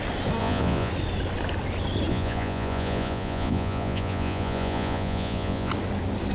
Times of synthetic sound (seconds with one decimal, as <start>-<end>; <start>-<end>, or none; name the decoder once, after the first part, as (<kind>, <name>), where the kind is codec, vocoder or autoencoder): 0.4-0.9 (vocoder, Vocos); 2.1-5.7

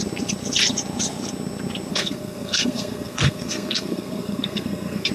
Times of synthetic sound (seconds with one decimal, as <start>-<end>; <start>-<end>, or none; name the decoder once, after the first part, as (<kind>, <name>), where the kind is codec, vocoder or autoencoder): 1.9-5.1 (codec, SNAC)

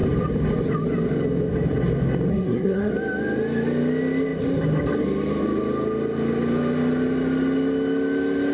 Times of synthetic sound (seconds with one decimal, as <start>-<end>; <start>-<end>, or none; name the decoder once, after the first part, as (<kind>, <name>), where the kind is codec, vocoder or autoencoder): 2.3-2.9 (codec, SNAC)

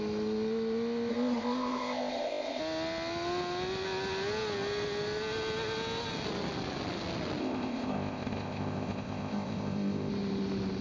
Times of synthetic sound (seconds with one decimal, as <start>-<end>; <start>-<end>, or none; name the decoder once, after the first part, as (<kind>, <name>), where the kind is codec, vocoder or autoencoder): 1.1-2.6 (codec, ZipCodec); 7.4-10.1